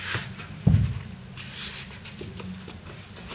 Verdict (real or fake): real